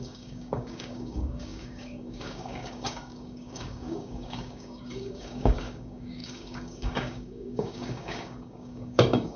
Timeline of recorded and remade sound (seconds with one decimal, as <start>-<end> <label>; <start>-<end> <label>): 0.0-9.4 remade

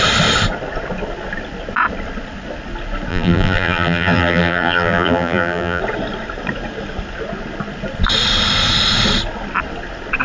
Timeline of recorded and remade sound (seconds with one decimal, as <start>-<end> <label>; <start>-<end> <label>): 0.0-3.1 recorded; 3.1-5.8 remade; 5.8-10.2 recorded